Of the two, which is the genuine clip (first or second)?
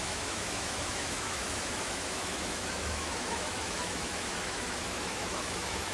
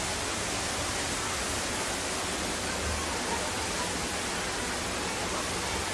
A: second